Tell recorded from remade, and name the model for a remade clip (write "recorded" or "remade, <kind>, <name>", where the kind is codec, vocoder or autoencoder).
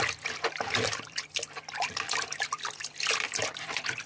remade, vocoder, BigVGAN v2